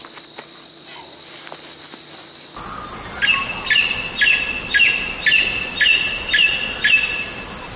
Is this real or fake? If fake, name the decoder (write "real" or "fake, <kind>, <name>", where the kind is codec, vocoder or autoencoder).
real